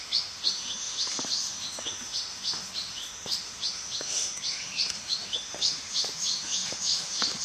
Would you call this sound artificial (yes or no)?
yes